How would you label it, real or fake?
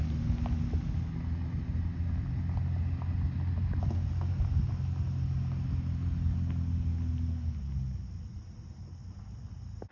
real